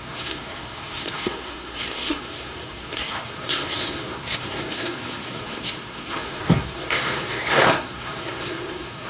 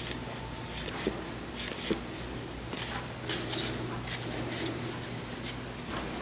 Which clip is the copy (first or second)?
first